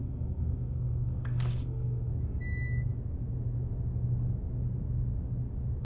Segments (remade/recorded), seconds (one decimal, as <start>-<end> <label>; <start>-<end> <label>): 0.0-2.1 remade; 2.1-5.8 recorded

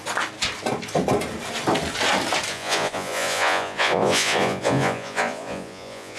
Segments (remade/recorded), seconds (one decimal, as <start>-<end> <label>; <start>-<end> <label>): 0.0-2.5 recorded; 2.5-6.2 remade

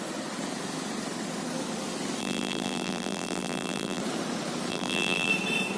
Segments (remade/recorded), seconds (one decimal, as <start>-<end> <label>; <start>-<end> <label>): 0.0-2.2 recorded; 2.2-4.0 remade; 4.0-4.7 recorded; 4.7-5.3 remade; 5.3-5.8 recorded

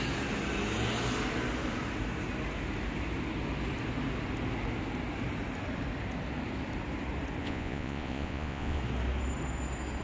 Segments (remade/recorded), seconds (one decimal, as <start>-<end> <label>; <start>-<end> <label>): 0.0-7.4 recorded; 7.4-8.8 remade; 8.8-10.0 recorded

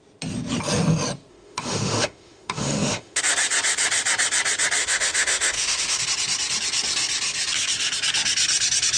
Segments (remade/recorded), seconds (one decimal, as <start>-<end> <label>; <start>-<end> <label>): 0.0-1.3 recorded; 1.3-3.2 remade; 3.2-4.8 recorded; 4.8-6.0 remade; 6.0-9.0 recorded

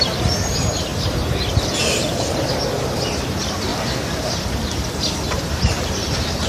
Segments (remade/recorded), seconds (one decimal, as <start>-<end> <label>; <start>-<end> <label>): 0.0-3.7 remade; 3.7-5.1 recorded; 5.1-6.5 remade

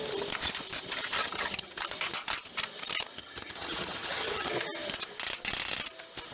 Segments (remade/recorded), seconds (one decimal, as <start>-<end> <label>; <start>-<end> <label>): 0.0-1.2 recorded; 1.2-1.8 remade; 1.8-3.2 recorded; 3.2-4.5 remade; 4.5-6.3 recorded

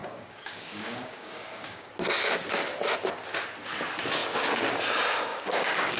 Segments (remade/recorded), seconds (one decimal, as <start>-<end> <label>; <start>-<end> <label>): 0.0-1.9 remade; 1.9-5.3 recorded; 5.3-6.0 remade